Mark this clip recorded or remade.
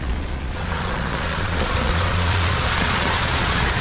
remade